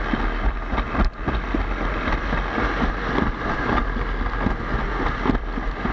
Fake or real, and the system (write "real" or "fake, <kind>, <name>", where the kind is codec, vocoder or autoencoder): real